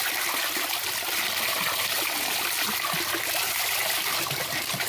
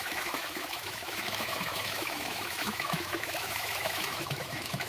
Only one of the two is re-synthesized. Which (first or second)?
second